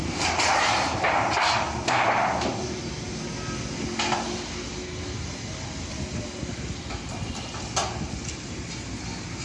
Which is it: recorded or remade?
recorded